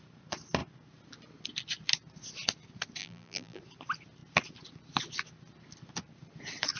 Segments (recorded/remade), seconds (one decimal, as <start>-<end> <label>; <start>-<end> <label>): 0.0-3.0 recorded; 3.0-3.6 remade; 3.6-6.8 recorded